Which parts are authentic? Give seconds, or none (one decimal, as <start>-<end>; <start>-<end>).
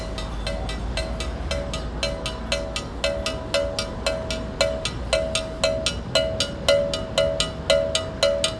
0.0-8.6